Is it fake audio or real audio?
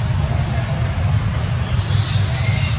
real